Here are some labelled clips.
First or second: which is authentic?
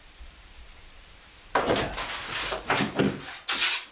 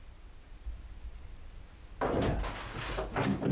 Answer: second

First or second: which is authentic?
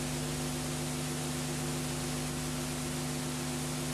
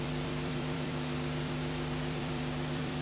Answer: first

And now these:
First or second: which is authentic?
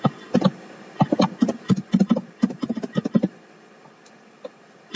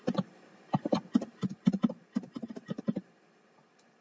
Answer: first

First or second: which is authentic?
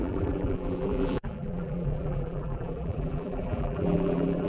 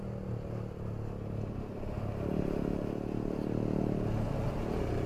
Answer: second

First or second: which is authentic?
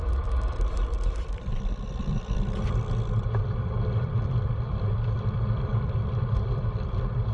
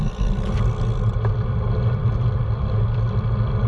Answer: second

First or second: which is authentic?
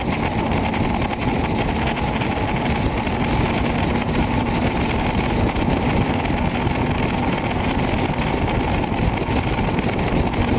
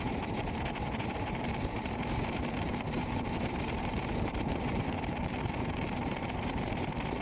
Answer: first